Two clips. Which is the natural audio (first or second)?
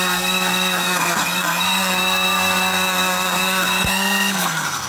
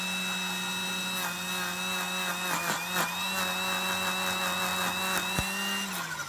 second